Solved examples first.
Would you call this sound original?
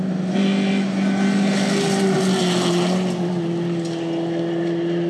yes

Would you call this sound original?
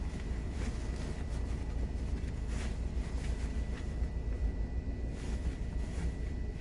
yes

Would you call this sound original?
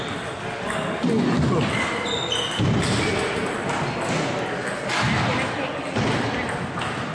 yes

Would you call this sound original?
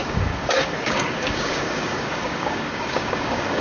no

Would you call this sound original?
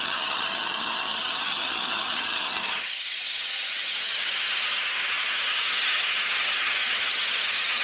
no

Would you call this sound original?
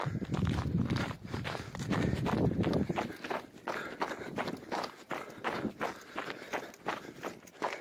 yes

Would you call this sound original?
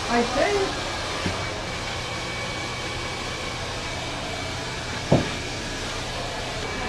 yes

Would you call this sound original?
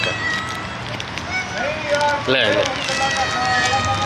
yes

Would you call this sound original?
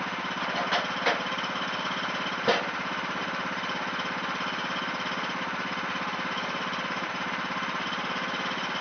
yes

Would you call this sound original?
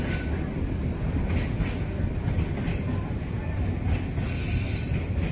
yes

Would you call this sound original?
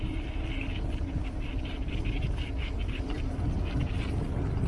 yes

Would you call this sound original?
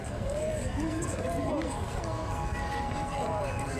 no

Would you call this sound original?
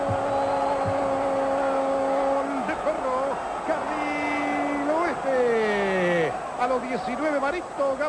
yes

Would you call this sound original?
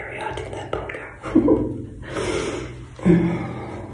yes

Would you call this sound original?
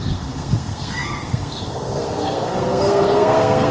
no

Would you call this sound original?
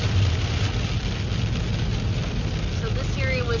yes